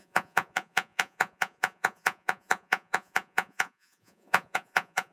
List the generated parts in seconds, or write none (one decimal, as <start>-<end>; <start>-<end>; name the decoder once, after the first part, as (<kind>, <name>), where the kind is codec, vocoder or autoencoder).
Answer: 0.0-5.1 (vocoder, Vocos)